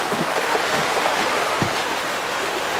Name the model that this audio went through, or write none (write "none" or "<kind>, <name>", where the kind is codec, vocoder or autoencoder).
autoencoder, DAC-VAE